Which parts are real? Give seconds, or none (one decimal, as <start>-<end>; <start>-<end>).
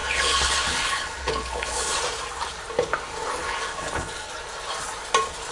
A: 2.0-3.4; 4.3-5.5